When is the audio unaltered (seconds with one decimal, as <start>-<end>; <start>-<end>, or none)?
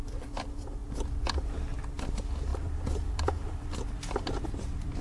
0.0-2.5; 3.8-5.0